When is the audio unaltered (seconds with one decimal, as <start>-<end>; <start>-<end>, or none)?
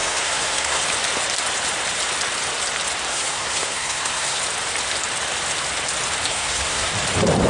0.8-3.1; 4.4-6.3; 6.9-7.5